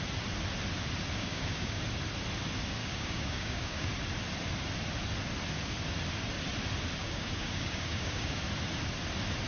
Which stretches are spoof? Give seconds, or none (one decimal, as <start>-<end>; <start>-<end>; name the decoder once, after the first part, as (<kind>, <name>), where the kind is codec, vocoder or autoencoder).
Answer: 1.2-1.8 (codec, DAC); 2.8-3.9; 7.0-8.4